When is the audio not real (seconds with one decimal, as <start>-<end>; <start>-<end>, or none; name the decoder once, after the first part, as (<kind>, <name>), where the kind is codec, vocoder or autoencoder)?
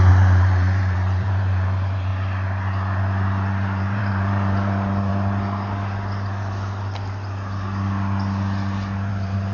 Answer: 0.0-2.1 (vocoder, BigVGAN v2); 3.5-5.1; 9.1-9.5